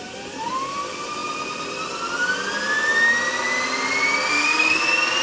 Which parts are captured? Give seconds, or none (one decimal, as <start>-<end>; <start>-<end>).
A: 0.0-4.3; 4.8-5.2